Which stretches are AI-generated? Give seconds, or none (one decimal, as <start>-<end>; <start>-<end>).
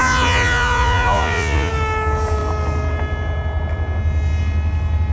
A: 0.0-1.7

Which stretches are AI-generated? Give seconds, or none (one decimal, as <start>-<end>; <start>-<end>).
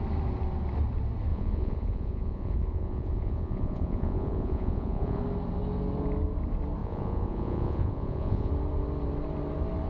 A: 1.3-5.2; 6.8-8.5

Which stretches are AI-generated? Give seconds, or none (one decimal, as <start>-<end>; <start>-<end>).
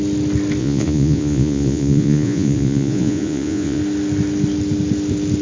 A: 0.6-3.8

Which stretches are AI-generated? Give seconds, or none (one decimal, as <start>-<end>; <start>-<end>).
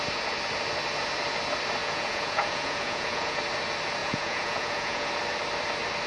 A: 1.8-3.4; 4.0-5.1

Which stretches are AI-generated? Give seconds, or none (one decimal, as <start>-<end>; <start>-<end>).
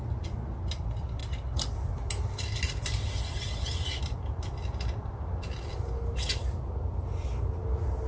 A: none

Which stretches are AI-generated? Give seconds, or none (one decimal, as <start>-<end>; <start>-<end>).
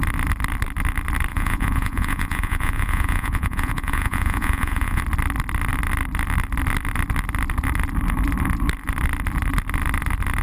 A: 1.3-5.0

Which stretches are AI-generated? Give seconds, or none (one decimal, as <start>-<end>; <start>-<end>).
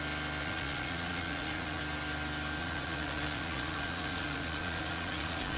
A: 0.4-1.8; 2.6-5.6